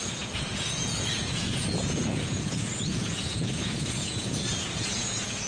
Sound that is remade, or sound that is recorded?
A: remade